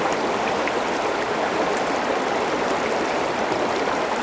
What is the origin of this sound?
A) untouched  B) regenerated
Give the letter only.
A